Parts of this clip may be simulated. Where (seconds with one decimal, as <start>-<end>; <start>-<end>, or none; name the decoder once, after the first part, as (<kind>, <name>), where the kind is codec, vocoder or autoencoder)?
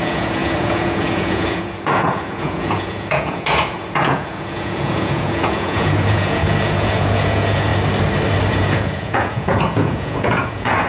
0.0-7.7 (vocoder, Vocos); 8.5-10.9